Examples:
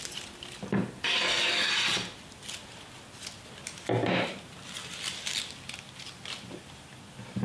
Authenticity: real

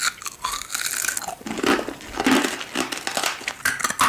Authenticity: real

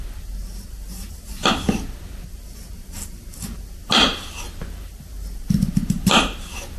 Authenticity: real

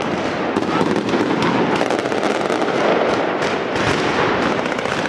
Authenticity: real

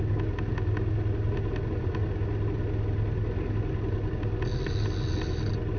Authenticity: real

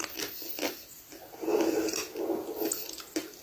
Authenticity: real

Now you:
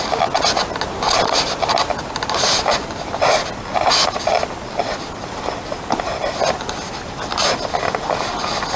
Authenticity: real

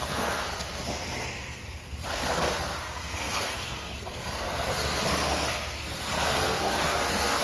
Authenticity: fake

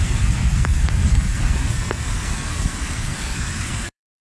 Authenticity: fake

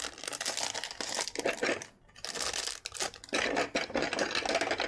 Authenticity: real